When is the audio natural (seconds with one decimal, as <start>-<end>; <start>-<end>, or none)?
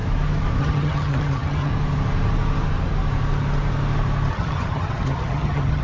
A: 0.0-0.6; 1.7-4.3